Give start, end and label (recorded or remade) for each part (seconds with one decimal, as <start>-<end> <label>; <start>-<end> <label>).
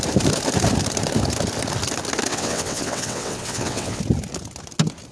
0.0-2.3 recorded; 2.3-4.0 remade; 4.0-5.1 recorded